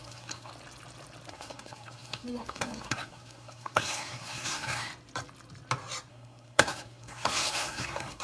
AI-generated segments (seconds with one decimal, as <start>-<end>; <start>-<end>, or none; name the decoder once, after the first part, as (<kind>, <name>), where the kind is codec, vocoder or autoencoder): 0.0-0.5 (codec, SNAC); 1.3-4.9; 6.1-8.2

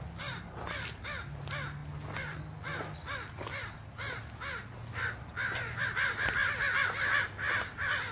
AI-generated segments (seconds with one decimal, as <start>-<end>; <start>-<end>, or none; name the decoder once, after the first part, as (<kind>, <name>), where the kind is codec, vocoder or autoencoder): none

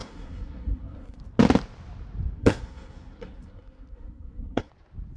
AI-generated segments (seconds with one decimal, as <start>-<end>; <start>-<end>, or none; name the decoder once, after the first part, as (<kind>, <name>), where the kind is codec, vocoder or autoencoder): 0.0-1.2 (codec, SNAC); 2.4-4.7